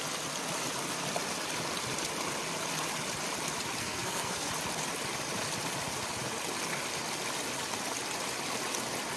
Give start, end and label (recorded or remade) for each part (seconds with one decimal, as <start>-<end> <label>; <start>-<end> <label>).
0.0-3.8 recorded; 3.8-4.5 remade; 4.5-9.2 recorded